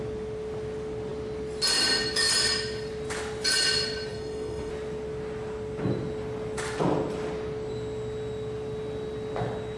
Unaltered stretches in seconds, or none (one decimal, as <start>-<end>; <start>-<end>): 0.0-4.1; 4.7-9.8